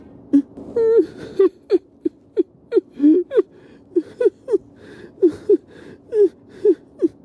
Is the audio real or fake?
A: real